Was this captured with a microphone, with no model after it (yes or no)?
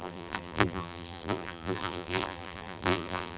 no